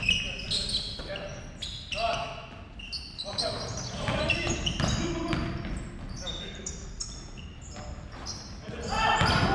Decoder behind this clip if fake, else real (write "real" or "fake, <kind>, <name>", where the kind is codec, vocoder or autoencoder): real